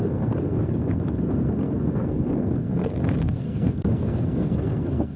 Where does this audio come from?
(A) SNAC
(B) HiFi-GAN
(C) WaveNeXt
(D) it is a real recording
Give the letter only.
A